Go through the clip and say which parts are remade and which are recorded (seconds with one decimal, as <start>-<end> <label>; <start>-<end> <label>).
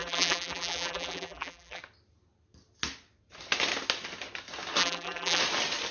0.0-1.8 remade; 1.8-4.8 recorded; 4.8-5.4 remade; 5.4-5.9 recorded